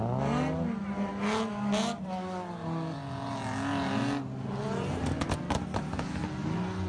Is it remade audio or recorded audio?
recorded